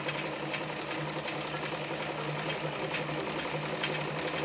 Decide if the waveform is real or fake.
real